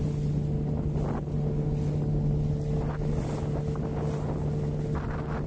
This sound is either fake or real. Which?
real